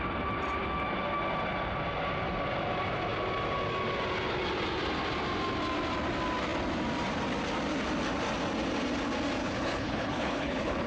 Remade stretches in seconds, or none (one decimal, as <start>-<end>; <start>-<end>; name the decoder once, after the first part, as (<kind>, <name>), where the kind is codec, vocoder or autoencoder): 9.4-10.9 (codec, HILCodec)